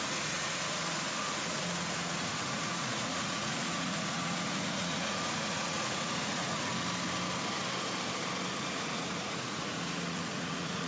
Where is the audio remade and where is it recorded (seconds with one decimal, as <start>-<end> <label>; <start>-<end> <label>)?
0.0-6.7 remade; 6.7-8.5 recorded; 8.5-10.9 remade